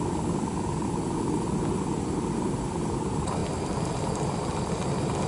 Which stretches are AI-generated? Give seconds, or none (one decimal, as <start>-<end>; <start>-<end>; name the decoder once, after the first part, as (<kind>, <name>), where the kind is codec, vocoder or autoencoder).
none